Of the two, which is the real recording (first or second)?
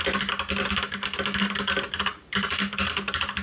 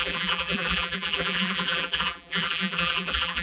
first